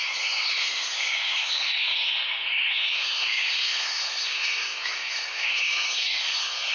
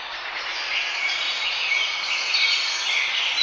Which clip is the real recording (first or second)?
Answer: second